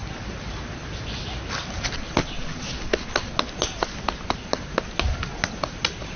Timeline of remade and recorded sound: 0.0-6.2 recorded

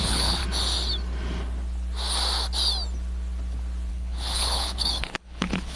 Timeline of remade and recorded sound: 0.0-0.4 remade; 0.4-3.9 recorded; 3.9-5.8 remade